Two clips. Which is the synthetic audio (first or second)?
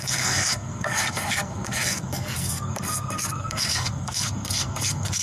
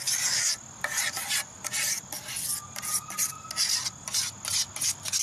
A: first